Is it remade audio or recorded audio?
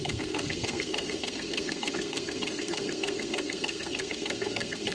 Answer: remade